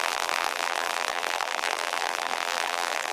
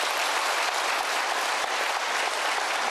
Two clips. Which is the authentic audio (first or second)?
second